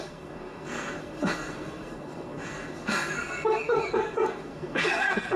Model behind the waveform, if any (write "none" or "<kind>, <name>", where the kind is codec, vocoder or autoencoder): codec, SNAC